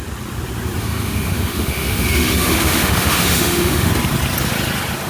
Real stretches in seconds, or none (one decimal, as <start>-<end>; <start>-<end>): 0.0-0.8; 3.9-5.1